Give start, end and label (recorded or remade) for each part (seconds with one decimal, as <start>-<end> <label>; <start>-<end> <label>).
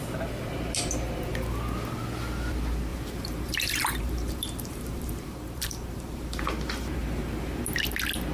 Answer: 0.0-2.9 recorded; 2.9-6.5 remade; 6.5-7.0 recorded; 7.0-7.6 remade; 7.6-8.3 recorded